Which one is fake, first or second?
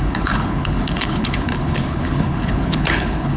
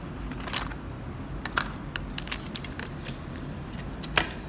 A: first